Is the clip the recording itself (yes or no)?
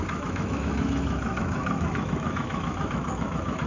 no